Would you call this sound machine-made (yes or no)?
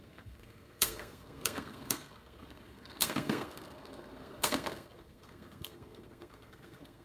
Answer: yes